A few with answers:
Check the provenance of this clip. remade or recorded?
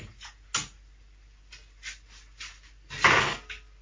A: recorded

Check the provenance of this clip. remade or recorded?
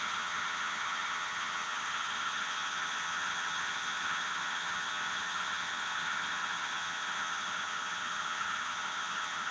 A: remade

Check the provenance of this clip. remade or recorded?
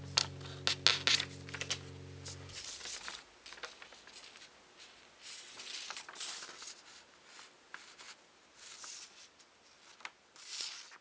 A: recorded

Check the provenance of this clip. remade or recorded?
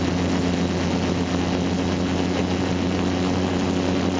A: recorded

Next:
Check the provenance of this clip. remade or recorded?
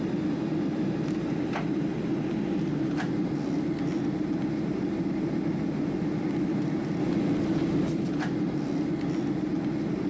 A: recorded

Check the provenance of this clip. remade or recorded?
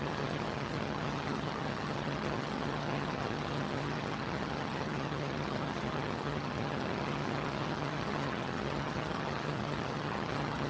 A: remade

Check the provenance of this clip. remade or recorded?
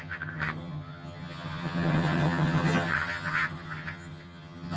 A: remade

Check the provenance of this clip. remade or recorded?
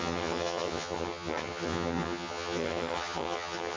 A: remade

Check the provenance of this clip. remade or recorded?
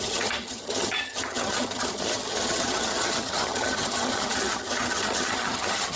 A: remade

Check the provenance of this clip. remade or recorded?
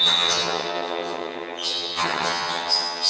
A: remade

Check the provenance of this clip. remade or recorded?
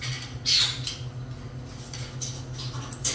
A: recorded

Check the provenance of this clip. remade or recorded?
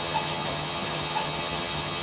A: remade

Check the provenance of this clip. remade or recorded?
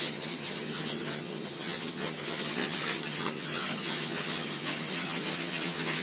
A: remade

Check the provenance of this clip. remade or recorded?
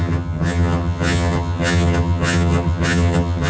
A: remade